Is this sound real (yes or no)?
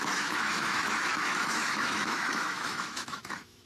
no